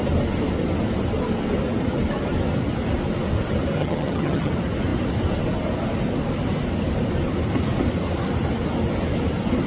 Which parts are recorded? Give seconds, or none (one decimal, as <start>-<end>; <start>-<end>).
0.0-3.8; 4.5-9.7